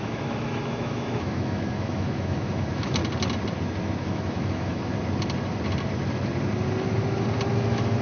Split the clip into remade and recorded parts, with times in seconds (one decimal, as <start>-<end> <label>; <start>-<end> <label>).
0.0-3.0 remade; 3.0-4.0 recorded; 4.0-4.9 remade; 4.9-7.5 recorded; 7.5-8.0 remade